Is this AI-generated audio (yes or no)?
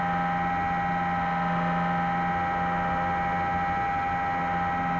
no